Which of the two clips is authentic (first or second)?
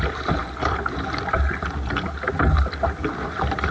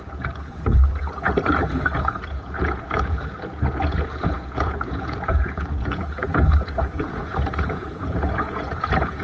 first